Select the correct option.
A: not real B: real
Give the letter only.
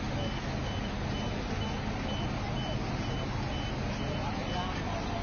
B